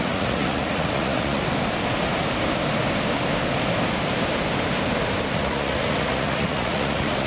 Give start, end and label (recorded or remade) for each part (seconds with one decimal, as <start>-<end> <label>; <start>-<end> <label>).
0.0-1.4 remade; 1.4-5.3 recorded; 5.3-7.3 remade